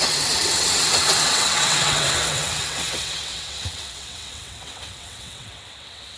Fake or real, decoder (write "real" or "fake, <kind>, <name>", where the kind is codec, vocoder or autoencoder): fake, vocoder, WaveNeXt